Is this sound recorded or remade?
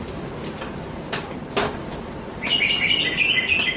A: recorded